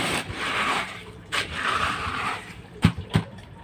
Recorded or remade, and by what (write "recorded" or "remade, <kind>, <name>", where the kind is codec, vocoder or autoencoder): remade, vocoder, BigVGAN v2